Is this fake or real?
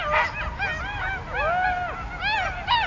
real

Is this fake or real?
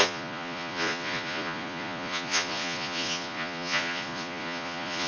fake